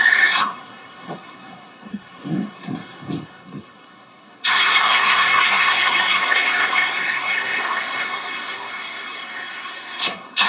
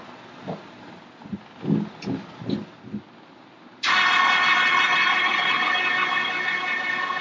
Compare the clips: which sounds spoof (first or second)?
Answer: first